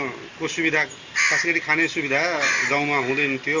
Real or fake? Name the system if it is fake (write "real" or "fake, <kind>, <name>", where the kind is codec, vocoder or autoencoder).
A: real